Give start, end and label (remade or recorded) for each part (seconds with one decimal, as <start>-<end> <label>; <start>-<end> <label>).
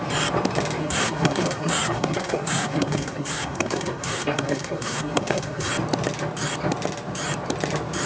0.0-0.8 recorded; 0.8-5.7 remade; 5.7-8.1 recorded